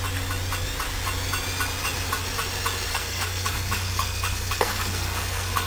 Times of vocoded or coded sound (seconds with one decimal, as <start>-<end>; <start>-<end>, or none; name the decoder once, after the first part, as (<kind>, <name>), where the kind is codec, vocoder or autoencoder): 2.9-5.7 (codec, SNAC)